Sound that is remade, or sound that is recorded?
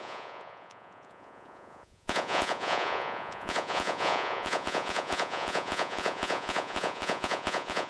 remade